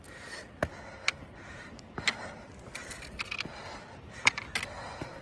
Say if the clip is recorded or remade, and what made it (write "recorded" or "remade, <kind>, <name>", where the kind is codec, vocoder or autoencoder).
recorded